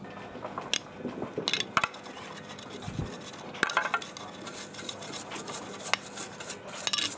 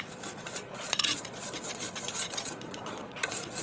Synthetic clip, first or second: second